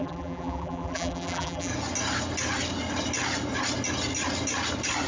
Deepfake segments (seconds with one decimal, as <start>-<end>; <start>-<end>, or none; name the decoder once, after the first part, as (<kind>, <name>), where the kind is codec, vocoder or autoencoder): 0.0-1.7 (vocoder, BigVGAN v2)

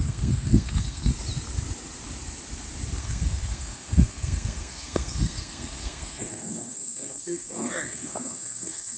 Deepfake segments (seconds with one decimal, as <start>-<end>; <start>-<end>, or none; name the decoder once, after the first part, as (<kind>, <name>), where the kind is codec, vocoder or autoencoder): 0.0-1.1 (codec, SNAC); 3.0-9.0

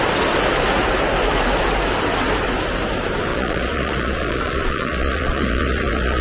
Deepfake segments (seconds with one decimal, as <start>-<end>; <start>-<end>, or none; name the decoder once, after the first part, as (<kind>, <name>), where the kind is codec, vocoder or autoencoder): 3.3-6.2 (vocoder, Vocos)

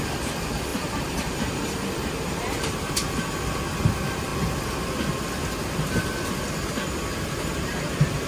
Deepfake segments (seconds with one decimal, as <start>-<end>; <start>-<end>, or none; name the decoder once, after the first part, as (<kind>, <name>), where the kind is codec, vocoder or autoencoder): 0.7-3.2 (vocoder, BigVGAN v2)

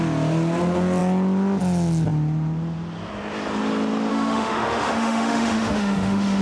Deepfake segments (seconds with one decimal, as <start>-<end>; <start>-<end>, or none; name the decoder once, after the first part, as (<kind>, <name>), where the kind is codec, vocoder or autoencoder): 4.1-6.4 (autoencoder, DAC-VAE)

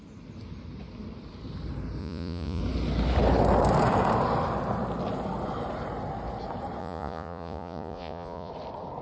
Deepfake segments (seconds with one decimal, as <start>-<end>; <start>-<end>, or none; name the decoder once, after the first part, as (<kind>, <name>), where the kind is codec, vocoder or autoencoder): 2.0-2.6 (vocoder, Vocos); 6.8-8.5

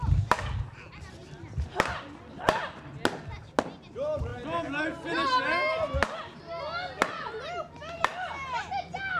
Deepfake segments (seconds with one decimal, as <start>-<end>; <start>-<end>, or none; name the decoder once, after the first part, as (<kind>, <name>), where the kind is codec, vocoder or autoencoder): 4.3-5.4 (vocoder, BigVGAN v2)

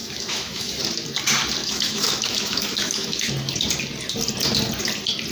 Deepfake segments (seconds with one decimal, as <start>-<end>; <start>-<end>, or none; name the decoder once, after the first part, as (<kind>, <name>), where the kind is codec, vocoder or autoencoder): 0.0-0.8 (autoencoder, DAC-VAE); 1.6-3.3